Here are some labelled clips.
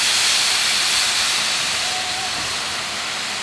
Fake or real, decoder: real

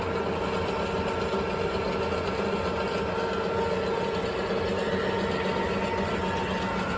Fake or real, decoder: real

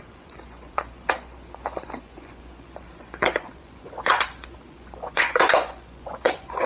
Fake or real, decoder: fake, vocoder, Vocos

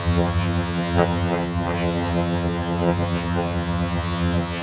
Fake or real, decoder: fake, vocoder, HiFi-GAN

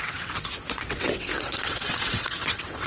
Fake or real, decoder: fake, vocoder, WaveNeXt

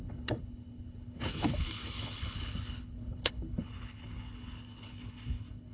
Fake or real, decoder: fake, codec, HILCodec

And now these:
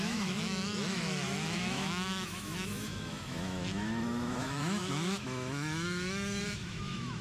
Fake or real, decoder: fake, autoencoder, DAC-VAE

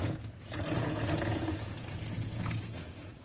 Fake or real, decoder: fake, vocoder, Vocos